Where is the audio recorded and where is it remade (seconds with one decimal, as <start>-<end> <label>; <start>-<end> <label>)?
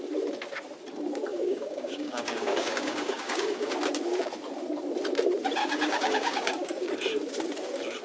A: 0.0-1.3 recorded; 1.3-3.7 remade; 3.7-5.6 recorded; 5.6-6.9 remade; 6.9-8.0 recorded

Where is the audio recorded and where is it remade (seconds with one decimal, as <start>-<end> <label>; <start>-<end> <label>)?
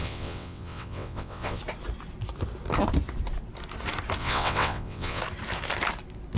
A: 0.0-1.6 remade; 1.6-4.2 recorded; 4.2-5.2 remade; 5.2-6.4 recorded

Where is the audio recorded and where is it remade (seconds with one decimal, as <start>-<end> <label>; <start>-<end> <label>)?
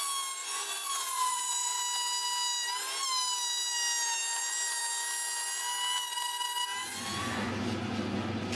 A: 0.0-0.4 recorded; 0.4-1.8 remade; 1.8-6.8 recorded; 6.8-7.5 remade; 7.5-8.5 recorded